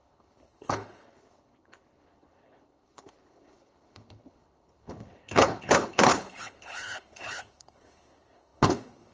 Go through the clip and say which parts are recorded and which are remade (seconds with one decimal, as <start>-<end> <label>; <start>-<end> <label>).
0.0-9.1 remade